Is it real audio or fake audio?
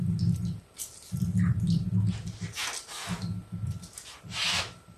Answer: real